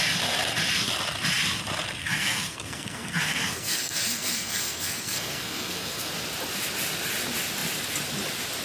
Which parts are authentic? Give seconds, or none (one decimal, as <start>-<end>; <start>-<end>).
0.0-2.0; 6.1-8.6